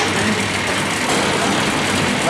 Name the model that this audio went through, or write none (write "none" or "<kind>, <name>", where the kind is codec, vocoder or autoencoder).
none